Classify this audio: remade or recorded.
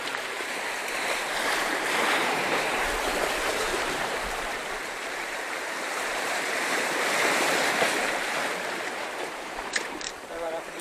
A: remade